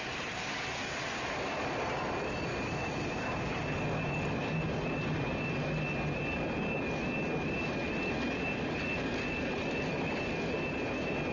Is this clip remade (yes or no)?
no